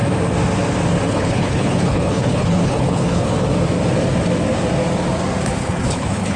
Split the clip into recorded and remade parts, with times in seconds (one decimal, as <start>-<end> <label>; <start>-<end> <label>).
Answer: 0.0-1.1 recorded; 1.1-3.3 remade; 3.3-5.6 recorded; 5.6-6.4 remade